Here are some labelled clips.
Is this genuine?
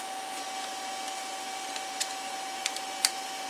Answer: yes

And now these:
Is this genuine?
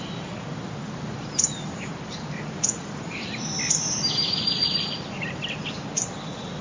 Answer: no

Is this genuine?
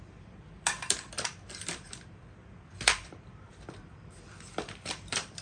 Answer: no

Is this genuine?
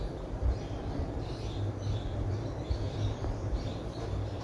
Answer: no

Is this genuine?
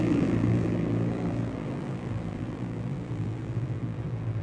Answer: no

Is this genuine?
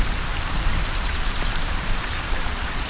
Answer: no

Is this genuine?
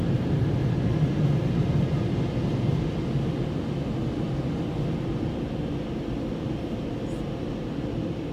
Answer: yes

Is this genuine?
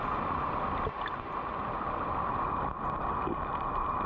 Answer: yes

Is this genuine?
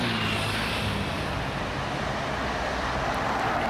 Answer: yes